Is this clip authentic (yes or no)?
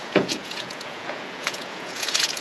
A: no